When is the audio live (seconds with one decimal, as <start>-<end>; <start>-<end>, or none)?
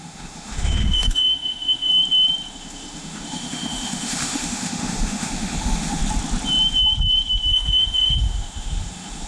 1.9-2.5; 6.0-7.5